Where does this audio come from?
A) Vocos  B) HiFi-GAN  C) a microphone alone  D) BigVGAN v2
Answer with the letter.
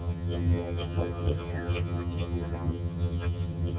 B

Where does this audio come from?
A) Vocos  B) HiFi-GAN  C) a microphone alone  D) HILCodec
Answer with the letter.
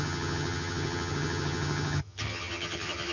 B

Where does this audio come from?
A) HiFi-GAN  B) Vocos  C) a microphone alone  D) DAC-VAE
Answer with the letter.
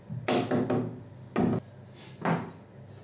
C